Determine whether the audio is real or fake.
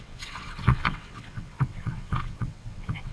fake